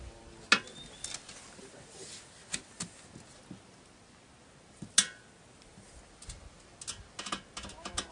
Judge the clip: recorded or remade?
recorded